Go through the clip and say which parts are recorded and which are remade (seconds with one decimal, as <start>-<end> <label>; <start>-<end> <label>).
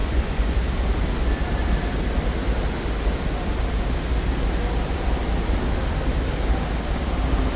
0.0-0.5 remade; 0.5-7.6 recorded